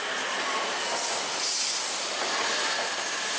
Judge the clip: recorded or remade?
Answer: recorded